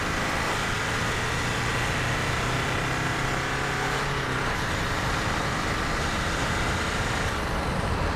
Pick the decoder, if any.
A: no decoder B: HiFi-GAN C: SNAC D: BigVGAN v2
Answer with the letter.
A